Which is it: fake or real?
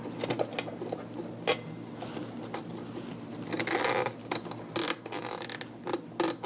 real